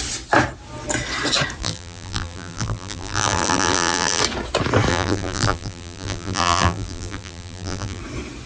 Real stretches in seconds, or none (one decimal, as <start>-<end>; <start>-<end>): 0.0-1.6; 4.2-4.9; 8.0-8.5